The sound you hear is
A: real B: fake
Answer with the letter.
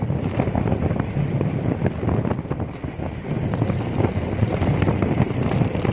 A